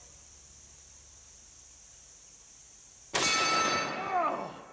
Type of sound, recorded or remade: recorded